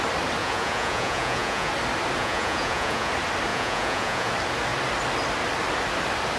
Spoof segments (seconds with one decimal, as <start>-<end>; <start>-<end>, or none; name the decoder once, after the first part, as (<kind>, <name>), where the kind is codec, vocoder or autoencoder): 0.4-1.7 (vocoder, Vocos); 2.2-3.1; 3.5-4.3